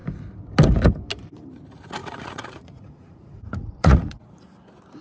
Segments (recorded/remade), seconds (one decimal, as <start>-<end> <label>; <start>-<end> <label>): 0.0-2.0 recorded; 2.0-4.2 remade; 4.2-5.0 recorded